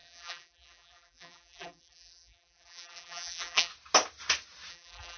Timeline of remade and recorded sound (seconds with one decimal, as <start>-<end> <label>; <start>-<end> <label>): 0.0-3.7 remade; 3.7-4.7 recorded; 4.7-5.2 remade